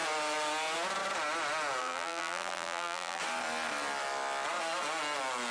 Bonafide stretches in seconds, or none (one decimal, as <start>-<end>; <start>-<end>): 0.0-1.8; 3.2-5.5